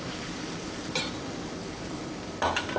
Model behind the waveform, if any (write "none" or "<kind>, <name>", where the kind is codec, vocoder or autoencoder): none